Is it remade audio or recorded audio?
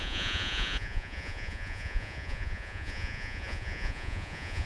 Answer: remade